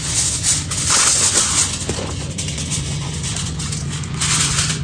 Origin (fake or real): fake